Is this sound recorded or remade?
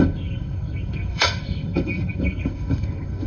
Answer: remade